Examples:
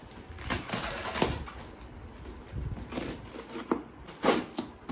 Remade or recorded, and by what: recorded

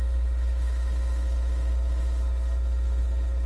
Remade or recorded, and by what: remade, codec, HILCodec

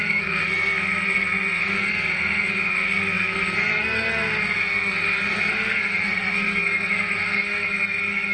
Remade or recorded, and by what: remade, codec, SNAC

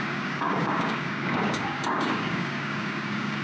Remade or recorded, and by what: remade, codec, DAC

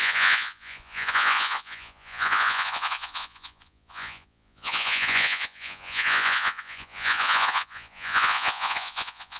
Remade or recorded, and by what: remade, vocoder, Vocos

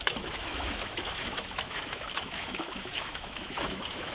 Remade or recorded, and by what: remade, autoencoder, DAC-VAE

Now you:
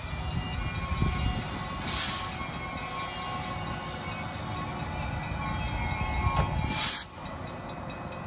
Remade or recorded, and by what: recorded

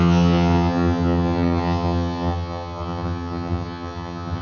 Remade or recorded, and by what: remade, vocoder, HiFi-GAN